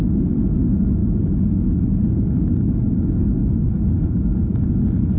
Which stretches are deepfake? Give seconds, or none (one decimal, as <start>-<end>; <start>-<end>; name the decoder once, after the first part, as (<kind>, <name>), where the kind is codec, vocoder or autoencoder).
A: 3.4-4.7 (vocoder, BigVGAN v2)